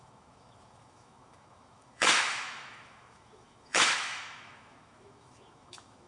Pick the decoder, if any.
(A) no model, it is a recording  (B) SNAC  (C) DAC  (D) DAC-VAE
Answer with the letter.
D